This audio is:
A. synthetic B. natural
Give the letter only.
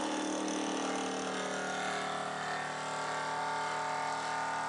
B